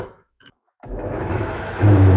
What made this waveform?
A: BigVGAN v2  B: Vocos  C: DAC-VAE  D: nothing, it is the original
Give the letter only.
C